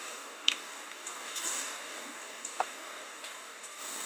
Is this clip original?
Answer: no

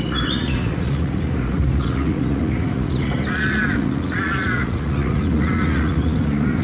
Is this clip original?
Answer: no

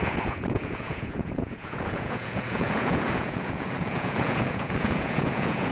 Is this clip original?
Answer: no